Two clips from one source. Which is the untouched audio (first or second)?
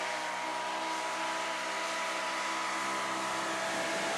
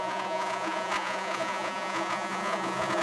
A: first